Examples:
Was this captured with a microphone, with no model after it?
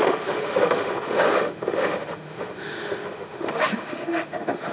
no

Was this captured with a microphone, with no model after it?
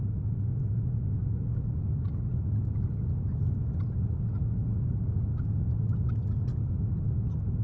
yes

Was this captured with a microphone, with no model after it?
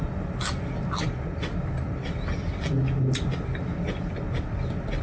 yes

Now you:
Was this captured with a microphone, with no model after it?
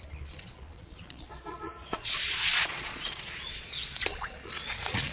no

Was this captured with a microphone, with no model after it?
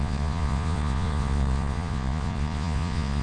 no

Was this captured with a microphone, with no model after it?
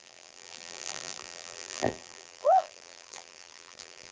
no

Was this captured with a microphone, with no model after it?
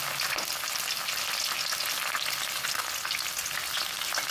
yes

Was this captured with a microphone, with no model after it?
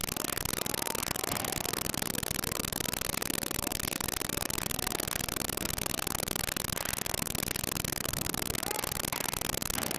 yes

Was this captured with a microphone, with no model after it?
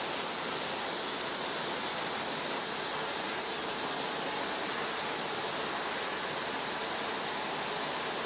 yes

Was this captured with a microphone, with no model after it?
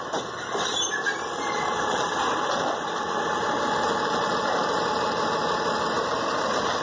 no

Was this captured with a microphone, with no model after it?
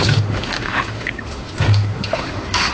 no